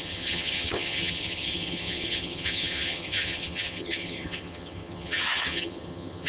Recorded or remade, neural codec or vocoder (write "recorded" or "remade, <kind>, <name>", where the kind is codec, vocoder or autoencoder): remade, vocoder, HiFi-GAN